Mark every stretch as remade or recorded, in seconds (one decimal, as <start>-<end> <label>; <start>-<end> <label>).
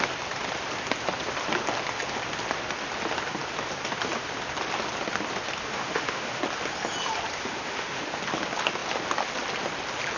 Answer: 0.0-5.6 recorded; 5.6-6.4 remade; 6.4-7.4 recorded; 7.4-8.2 remade; 8.2-10.2 recorded